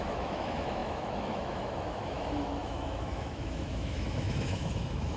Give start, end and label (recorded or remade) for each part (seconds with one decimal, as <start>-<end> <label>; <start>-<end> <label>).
0.0-5.2 remade